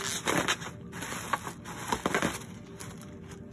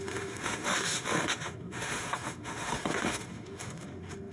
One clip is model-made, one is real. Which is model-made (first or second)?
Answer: second